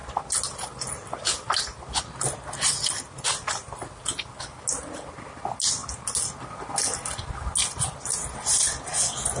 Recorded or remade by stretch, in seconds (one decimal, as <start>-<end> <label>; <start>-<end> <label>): 0.0-9.4 recorded